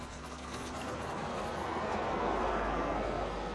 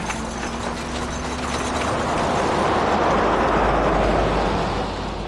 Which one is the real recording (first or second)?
second